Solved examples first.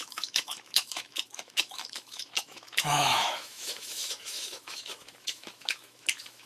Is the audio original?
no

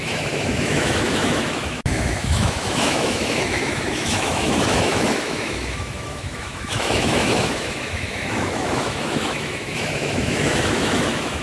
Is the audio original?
no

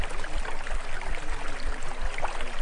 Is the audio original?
yes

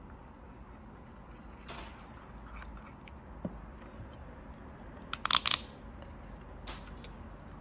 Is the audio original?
yes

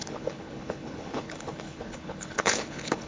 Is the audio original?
no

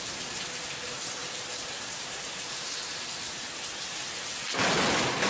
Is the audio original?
yes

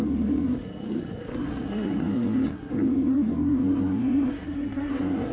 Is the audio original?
no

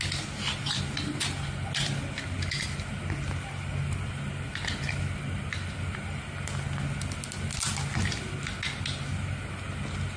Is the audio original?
yes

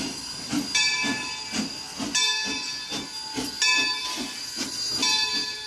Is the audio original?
yes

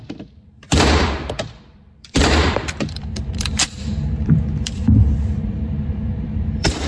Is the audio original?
no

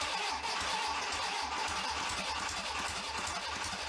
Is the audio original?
yes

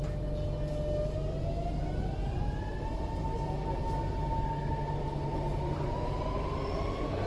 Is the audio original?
yes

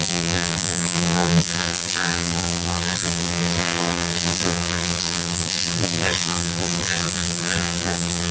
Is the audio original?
no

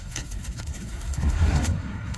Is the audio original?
no